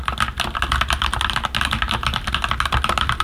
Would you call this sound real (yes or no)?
yes